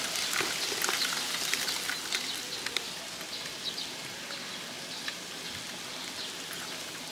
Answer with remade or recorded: recorded